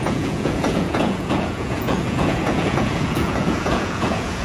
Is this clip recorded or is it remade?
remade